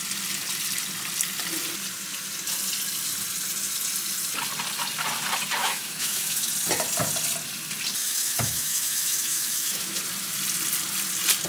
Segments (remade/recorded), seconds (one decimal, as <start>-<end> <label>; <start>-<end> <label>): 0.0-5.6 recorded; 5.6-6.5 remade; 6.5-8.0 recorded; 8.0-10.0 remade; 10.0-11.5 recorded